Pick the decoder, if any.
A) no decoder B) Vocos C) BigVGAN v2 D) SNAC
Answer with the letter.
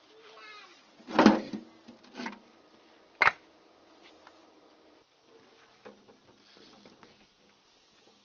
A